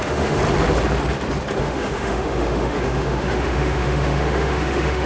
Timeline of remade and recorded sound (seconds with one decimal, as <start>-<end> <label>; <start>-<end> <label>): 0.0-0.4 remade; 0.4-1.6 recorded; 1.6-5.1 remade